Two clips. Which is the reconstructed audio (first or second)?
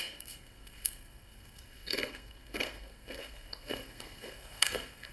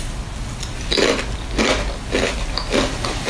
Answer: first